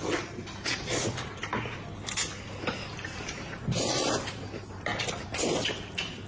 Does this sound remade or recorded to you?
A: recorded